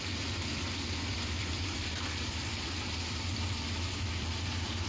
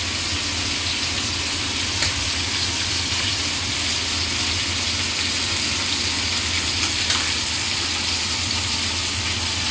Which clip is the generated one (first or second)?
first